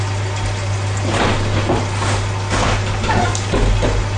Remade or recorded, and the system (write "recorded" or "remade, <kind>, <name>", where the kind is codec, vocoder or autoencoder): recorded